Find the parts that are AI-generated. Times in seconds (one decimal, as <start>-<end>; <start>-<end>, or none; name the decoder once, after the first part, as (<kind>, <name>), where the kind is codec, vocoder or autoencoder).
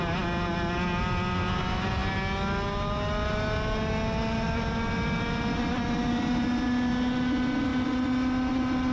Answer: none